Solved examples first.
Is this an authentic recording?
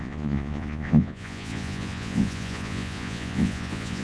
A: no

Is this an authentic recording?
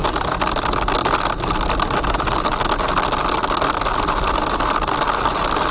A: yes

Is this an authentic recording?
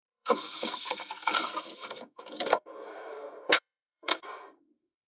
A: no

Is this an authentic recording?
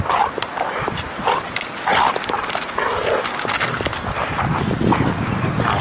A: yes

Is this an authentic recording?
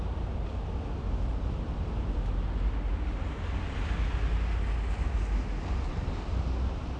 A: yes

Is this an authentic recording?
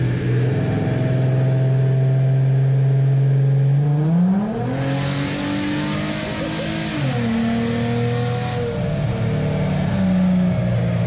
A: yes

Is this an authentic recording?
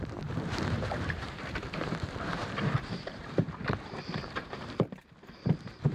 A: no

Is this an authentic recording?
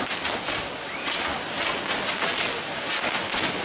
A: yes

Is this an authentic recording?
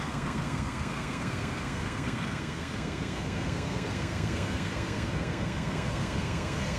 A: no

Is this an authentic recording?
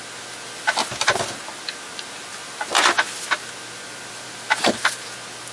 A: yes